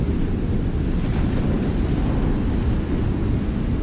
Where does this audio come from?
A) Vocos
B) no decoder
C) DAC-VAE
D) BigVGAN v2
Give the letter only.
B